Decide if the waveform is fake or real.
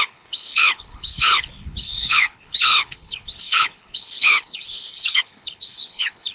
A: fake